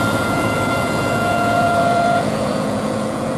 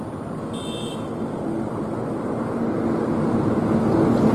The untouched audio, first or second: second